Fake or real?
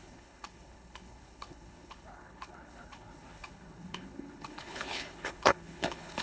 fake